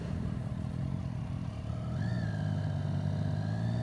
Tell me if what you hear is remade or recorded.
recorded